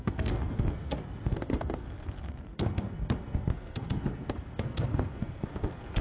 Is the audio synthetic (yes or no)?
yes